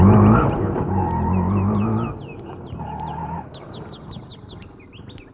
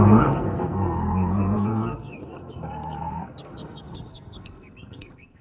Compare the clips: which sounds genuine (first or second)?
first